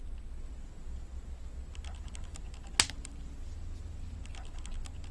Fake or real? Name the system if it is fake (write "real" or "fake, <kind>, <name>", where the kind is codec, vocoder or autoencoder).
real